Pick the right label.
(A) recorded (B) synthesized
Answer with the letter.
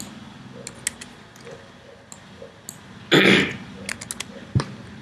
A